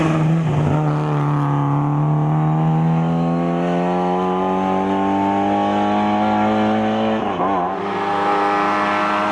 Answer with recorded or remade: recorded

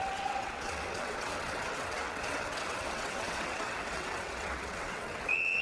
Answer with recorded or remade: remade